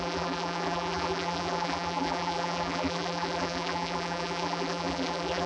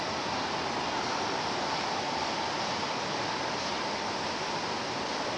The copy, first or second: first